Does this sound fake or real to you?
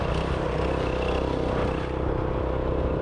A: real